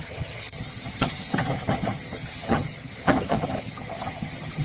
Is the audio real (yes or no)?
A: no